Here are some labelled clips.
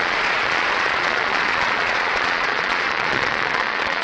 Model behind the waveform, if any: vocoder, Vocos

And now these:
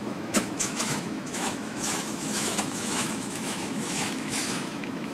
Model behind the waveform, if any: autoencoder, DAC-VAE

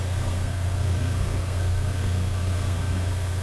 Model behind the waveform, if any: codec, SNAC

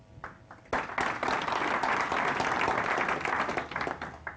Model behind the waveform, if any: none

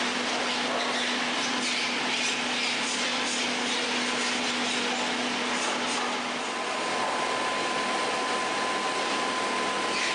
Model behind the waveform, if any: none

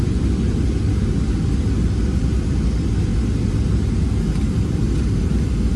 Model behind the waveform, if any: none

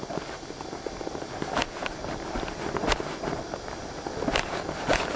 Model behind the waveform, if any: none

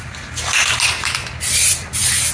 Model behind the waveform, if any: none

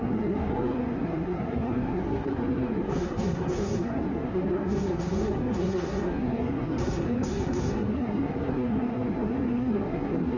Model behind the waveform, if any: codec, SNAC